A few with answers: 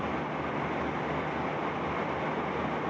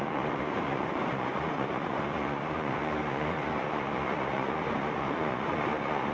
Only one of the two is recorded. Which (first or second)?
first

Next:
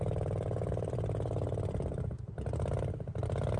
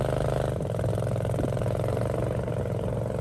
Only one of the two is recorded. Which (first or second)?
second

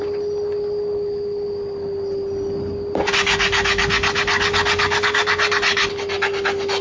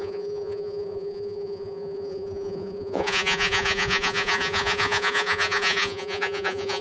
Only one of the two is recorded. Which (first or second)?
first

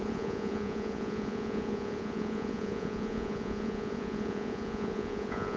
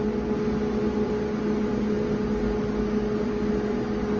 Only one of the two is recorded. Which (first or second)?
second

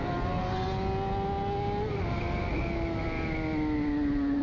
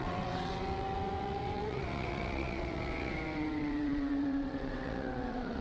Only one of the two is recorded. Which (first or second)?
first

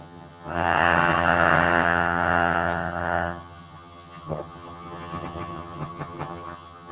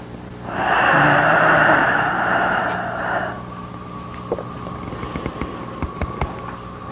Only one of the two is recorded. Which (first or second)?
second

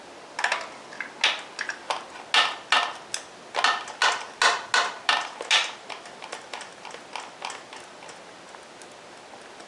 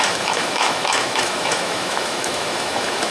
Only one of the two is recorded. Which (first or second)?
first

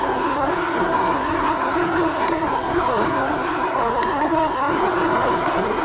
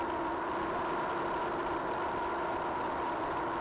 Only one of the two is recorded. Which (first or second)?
second